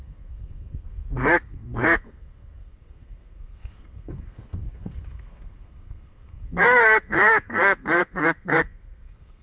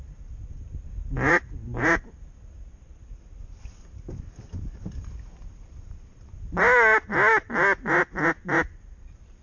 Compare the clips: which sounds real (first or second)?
second